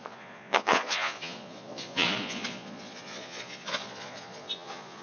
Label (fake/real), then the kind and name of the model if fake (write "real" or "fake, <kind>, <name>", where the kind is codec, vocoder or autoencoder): fake, vocoder, Vocos